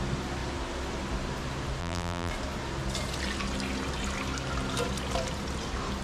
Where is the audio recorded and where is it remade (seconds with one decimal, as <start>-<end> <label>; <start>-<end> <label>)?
0.0-1.8 recorded; 1.8-2.3 remade; 2.3-6.0 recorded